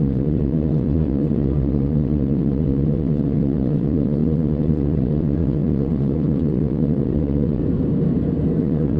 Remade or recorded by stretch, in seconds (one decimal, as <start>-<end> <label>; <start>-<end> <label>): 0.0-7.6 remade; 7.6-8.6 recorded; 8.6-9.0 remade